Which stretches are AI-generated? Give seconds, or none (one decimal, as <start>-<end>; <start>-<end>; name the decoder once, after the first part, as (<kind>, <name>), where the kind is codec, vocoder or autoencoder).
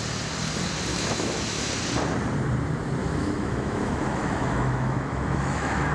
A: 0.9-1.7 (autoencoder, DAC-VAE); 3.0-5.9